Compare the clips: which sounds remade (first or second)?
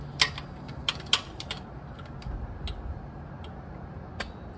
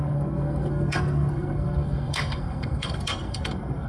second